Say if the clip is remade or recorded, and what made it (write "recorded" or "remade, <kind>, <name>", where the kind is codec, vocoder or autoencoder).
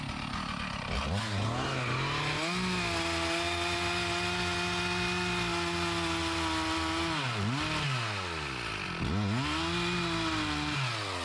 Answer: recorded